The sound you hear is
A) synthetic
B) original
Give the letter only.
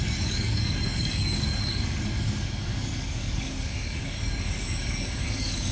A